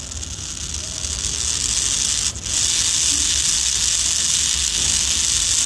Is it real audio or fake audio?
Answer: real